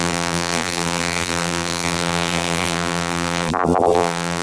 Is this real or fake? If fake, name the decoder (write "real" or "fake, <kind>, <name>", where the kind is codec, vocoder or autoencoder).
fake, vocoder, BigVGAN v2